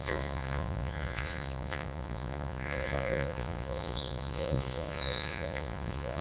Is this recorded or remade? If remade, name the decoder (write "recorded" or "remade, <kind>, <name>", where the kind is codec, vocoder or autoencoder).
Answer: remade, vocoder, Vocos